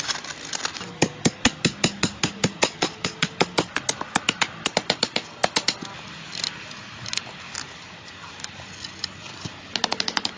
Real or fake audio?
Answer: real